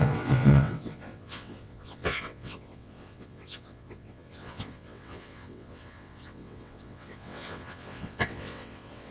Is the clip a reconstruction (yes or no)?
yes